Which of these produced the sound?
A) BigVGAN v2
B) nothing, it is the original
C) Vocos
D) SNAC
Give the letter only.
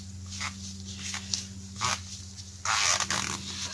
B